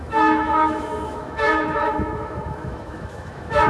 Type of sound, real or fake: fake